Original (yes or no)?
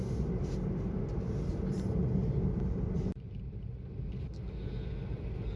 yes